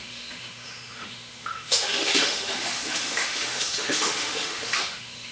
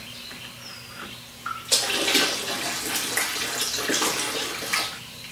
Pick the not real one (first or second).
first